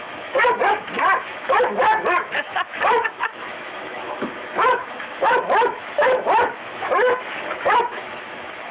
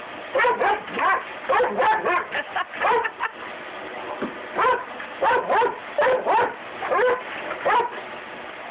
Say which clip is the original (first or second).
second